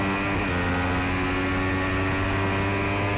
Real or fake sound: real